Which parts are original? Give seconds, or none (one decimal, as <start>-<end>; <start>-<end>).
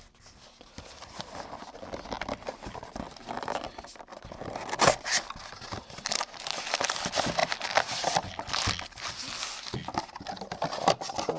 0.0-11.4